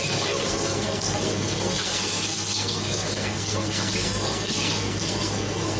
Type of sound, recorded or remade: remade